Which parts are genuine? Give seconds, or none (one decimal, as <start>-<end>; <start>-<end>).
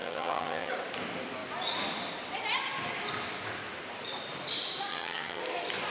0.7-4.9; 5.4-5.9